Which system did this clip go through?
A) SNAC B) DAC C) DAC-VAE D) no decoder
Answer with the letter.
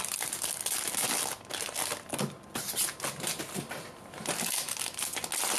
D